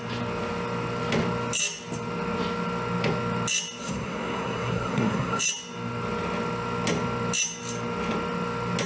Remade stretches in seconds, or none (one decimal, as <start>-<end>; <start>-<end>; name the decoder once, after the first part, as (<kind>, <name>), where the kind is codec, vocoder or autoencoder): 3.8-5.4 (codec, SNAC)